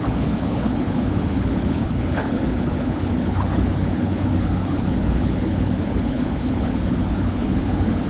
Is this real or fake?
fake